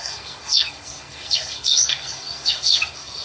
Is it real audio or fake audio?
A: fake